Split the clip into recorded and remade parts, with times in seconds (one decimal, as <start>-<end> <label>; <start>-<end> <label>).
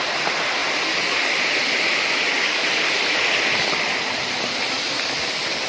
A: 0.0-5.7 recorded